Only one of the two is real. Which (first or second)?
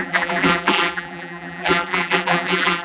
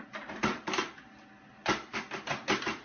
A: second